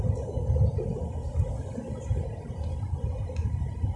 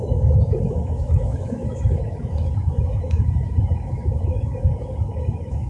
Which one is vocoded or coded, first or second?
second